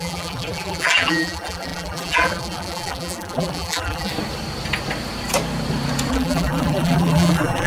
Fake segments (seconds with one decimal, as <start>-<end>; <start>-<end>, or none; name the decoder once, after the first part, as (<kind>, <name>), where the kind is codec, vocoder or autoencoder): 0.0-4.1 (vocoder, BigVGAN v2); 6.1-7.7